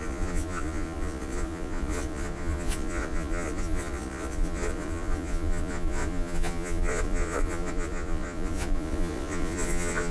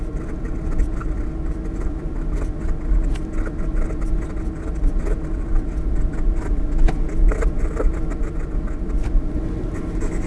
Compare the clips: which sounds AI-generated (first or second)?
first